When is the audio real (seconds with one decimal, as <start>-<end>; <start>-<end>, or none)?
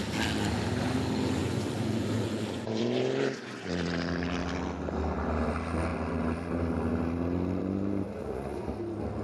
0.0-1.4; 2.8-8.2; 8.7-9.2